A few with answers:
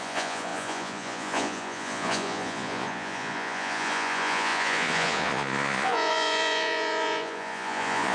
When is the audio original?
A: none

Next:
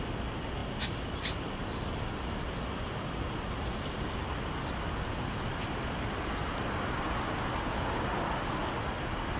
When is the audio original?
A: 0.0-9.4

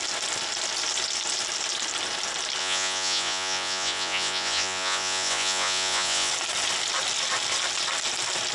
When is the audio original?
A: 0.0-2.6; 6.3-8.5